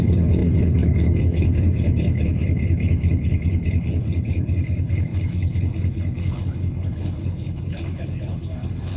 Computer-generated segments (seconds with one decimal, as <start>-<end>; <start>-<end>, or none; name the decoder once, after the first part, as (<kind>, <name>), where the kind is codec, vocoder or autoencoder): 0.0-9.0 (codec, HILCodec)